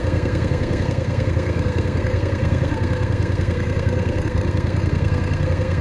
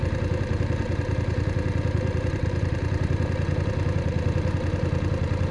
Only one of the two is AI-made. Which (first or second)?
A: first